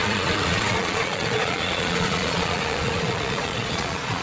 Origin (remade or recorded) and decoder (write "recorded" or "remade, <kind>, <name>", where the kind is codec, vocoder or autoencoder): remade, vocoder, Vocos